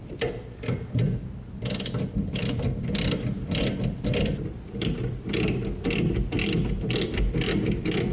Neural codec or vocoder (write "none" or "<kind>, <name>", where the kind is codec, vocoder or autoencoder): none